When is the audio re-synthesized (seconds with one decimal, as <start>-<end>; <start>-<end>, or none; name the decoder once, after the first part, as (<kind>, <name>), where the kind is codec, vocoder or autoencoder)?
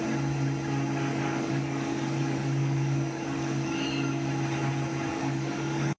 1.1-4.3 (codec, DAC); 5.1-6.0